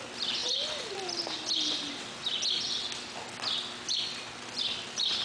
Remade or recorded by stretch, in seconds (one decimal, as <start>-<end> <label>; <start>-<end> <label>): 0.0-5.2 recorded